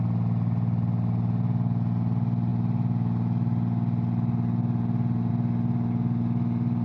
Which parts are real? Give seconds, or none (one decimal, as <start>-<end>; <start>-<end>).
0.0-6.8